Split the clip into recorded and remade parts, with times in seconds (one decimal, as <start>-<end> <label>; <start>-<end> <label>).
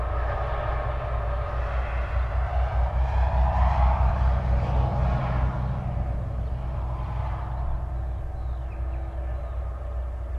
0.0-10.4 recorded